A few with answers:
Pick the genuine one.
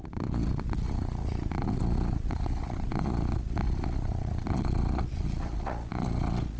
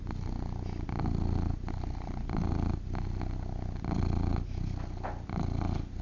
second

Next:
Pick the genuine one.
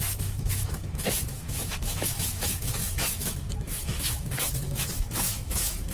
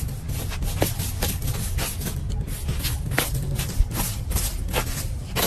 second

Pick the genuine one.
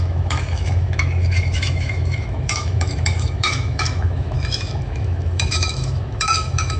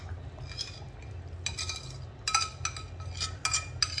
second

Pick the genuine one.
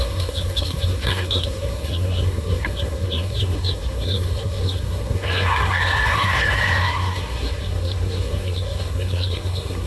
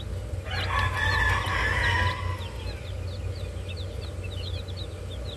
second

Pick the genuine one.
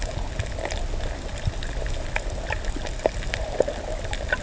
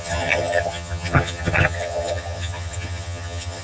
first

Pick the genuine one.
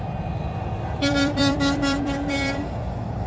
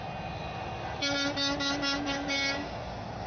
second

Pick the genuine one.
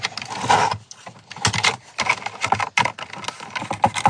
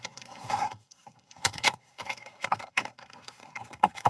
first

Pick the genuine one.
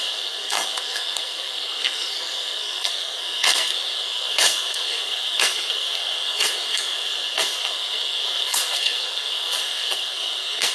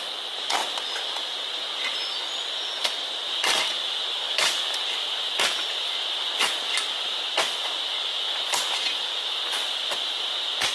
second